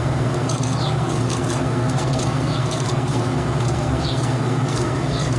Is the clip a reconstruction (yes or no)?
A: yes